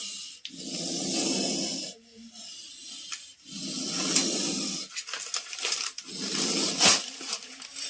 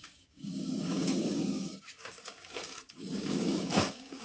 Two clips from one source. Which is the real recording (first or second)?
first